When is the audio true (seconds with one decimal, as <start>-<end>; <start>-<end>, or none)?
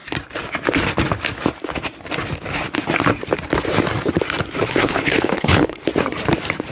0.0-4.8; 5.8-6.7